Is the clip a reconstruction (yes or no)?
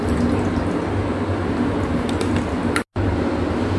no